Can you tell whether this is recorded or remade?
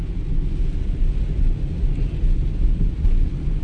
recorded